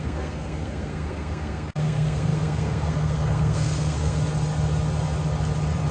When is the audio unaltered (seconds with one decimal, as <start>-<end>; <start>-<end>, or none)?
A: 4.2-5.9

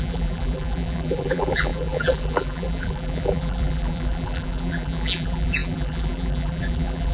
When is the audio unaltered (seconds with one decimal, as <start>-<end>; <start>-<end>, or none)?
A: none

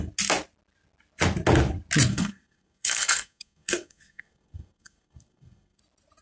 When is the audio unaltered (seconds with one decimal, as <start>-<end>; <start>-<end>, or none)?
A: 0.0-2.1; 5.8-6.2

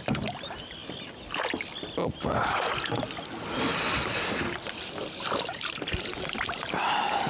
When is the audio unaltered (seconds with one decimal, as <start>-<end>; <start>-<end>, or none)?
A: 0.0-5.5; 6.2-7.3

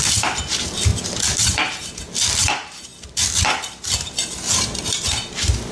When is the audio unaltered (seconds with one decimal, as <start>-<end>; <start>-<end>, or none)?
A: 0.0-5.7